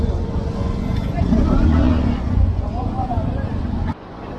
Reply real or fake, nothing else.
fake